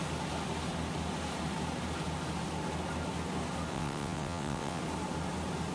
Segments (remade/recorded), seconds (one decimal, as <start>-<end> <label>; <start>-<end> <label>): 0.0-3.7 recorded; 3.7-4.8 remade; 4.8-5.7 recorded